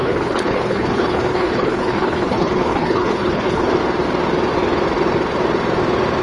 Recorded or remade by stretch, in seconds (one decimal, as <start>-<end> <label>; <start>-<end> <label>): 0.0-3.7 remade; 3.7-6.2 recorded